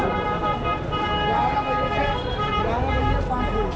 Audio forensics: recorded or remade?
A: recorded